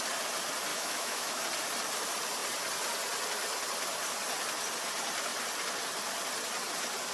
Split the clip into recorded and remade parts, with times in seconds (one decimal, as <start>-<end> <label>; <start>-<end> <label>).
0.0-0.7 recorded; 0.7-1.4 remade; 1.4-7.1 recorded